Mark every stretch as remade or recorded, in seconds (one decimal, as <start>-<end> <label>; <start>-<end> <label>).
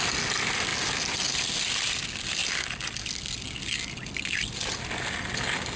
0.0-5.8 recorded